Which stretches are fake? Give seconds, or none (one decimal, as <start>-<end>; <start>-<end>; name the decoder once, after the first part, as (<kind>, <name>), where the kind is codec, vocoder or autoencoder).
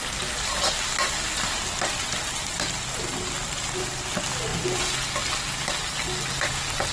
none